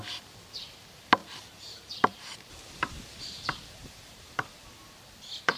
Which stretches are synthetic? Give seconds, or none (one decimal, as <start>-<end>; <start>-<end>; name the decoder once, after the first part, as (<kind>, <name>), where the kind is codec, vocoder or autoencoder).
1.2-4.6 (vocoder, BigVGAN v2)